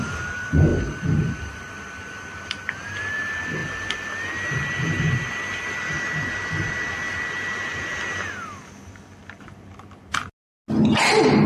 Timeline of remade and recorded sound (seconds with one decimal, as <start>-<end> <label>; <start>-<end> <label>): 0.0-0.7 recorded; 0.7-3.0 remade; 3.0-11.5 recorded